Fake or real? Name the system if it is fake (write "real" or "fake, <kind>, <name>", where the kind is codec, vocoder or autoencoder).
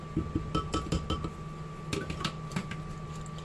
real